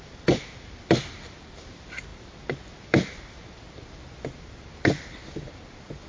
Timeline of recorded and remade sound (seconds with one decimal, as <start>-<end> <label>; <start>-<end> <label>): 0.0-6.1 recorded